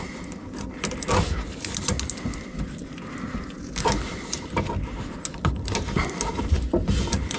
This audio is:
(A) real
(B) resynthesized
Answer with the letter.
A